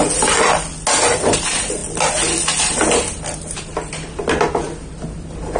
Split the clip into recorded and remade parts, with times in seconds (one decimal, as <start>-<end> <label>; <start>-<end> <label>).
0.0-1.1 recorded; 1.1-1.8 remade; 1.8-5.6 recorded